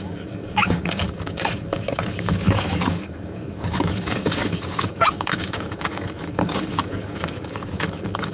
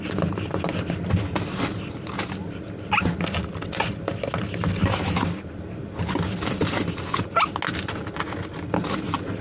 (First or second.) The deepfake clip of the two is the first